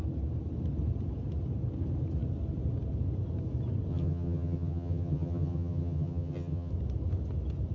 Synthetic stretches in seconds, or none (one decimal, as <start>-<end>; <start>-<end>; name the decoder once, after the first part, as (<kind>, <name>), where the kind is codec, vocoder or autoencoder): 3.9-6.7 (vocoder, HiFi-GAN)